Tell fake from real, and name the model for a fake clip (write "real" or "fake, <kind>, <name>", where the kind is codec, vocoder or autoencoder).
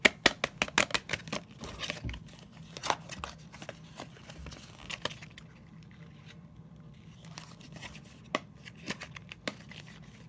real